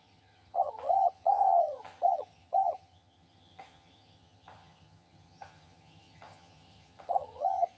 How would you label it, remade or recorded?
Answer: remade